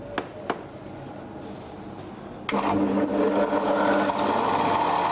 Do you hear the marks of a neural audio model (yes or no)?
no